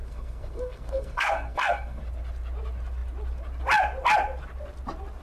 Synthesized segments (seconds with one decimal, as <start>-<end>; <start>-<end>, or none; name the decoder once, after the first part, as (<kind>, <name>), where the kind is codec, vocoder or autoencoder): 0.0-2.0 (codec, SNAC)